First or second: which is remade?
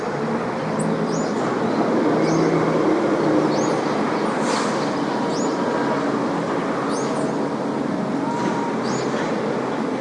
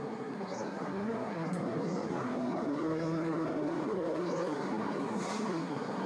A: second